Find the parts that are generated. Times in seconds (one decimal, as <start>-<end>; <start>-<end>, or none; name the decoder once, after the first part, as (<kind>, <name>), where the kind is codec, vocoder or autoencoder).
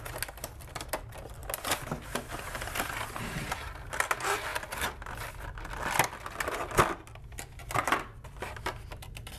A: none